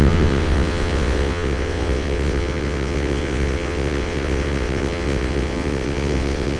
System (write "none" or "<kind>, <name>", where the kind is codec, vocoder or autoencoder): vocoder, WaveNeXt